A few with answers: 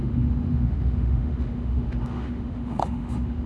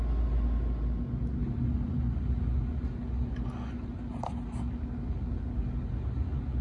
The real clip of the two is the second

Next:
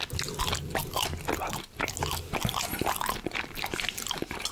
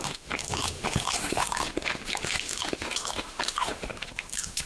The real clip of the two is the first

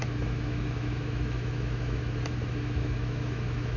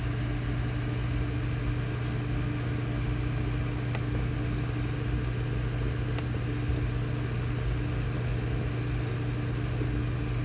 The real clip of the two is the second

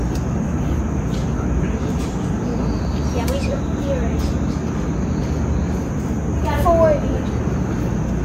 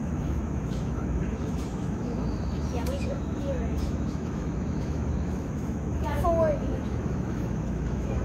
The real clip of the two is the first